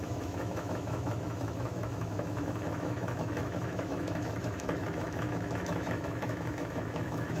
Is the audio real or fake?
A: fake